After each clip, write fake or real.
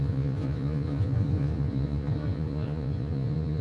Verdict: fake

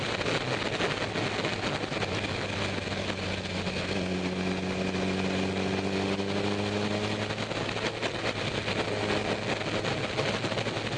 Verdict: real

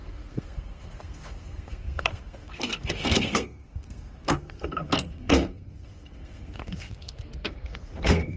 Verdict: fake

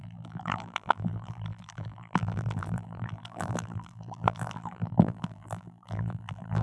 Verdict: fake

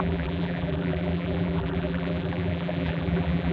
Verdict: fake